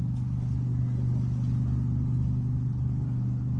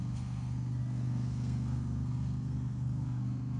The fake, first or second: second